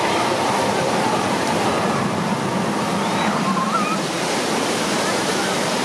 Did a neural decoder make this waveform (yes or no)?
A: no